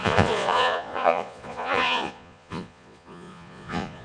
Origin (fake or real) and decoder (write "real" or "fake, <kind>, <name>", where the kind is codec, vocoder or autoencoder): fake, vocoder, Vocos